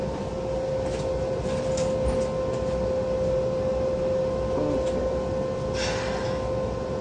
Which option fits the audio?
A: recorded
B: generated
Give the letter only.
A